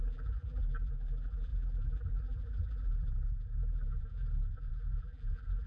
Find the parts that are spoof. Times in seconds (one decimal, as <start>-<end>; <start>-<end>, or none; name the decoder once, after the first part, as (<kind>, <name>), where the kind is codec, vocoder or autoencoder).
0.0-5.7 (vocoder, BigVGAN v2)